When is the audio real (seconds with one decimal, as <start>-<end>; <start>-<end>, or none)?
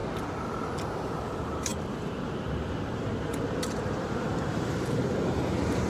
0.0-0.9